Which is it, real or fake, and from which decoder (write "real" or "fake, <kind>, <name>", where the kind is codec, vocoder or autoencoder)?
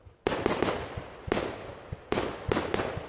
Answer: real